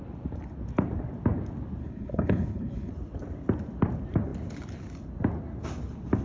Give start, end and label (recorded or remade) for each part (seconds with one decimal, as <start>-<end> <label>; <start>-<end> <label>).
0.0-1.8 recorded; 1.8-2.9 remade; 2.9-6.2 recorded